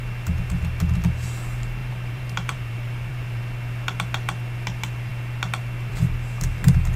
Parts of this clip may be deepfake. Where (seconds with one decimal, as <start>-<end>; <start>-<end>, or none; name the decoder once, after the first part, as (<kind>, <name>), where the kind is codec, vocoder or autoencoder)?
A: 1.8-3.4 (vocoder, BigVGAN v2)